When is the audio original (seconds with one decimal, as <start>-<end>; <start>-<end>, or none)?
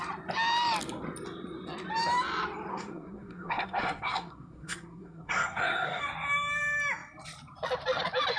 0.0-2.7; 6.0-8.4